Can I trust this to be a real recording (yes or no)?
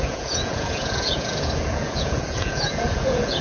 no